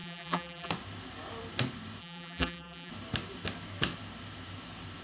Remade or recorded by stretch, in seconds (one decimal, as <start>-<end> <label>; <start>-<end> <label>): 0.0-0.7 remade; 0.7-2.0 recorded; 2.0-2.9 remade; 2.9-5.0 recorded